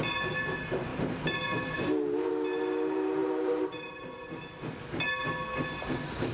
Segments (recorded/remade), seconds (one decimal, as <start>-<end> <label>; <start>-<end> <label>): 0.0-3.2 recorded; 3.2-4.1 remade; 4.1-6.3 recorded